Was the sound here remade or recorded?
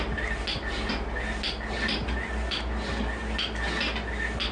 recorded